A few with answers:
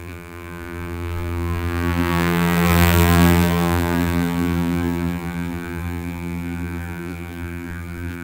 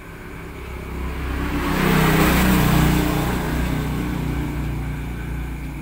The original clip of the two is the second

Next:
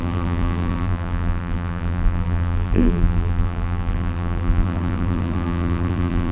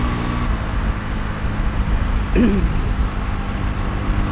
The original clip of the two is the second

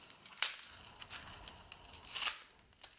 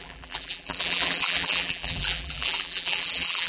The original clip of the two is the first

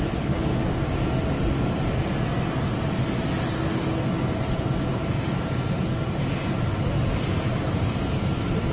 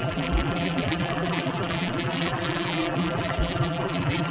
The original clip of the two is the first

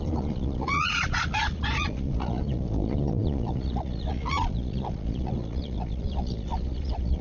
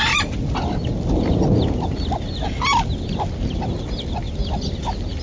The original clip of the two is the second